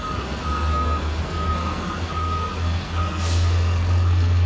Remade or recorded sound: remade